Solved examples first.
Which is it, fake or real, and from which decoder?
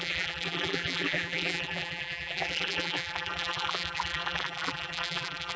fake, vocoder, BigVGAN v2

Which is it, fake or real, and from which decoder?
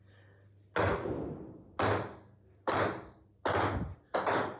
real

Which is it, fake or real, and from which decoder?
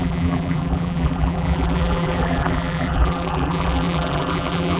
fake, vocoder, BigVGAN v2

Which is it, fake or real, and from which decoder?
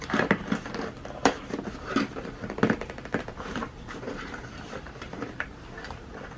fake, vocoder, BigVGAN v2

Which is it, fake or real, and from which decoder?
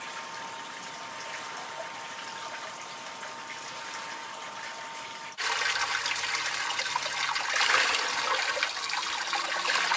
real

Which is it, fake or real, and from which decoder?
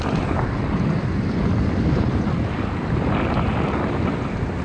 real